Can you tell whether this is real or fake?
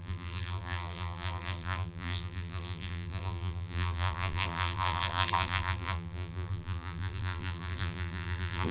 fake